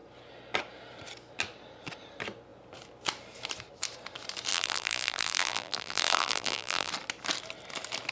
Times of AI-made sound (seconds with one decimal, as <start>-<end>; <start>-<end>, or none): 4.5-6.9